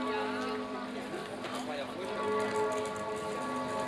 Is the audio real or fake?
real